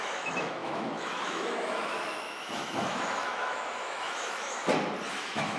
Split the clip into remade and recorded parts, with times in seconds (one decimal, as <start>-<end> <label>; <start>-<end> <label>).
0.0-4.6 remade; 4.6-5.1 recorded; 5.1-5.6 remade